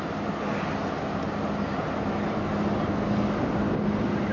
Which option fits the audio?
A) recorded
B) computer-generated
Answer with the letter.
A